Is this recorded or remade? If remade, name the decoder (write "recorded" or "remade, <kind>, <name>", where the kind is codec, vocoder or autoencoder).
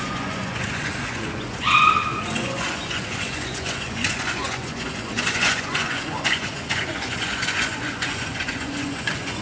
remade, vocoder, Vocos